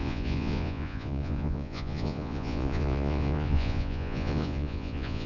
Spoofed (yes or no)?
yes